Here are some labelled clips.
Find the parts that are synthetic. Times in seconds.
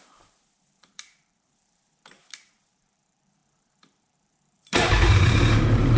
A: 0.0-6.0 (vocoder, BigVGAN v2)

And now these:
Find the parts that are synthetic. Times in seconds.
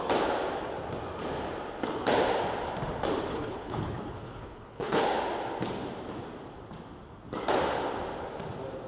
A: 3.3-5.0 (codec, HILCodec)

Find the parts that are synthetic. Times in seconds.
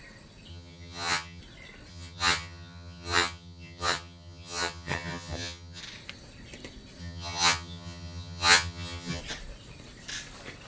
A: 0.5-1.4 (vocoder, HiFi-GAN); 1.9-5.8; 7.0-9.2